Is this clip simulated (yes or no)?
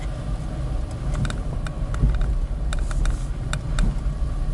no